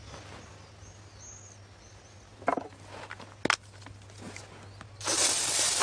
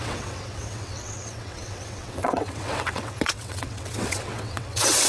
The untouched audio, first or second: first